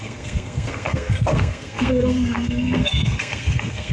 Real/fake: fake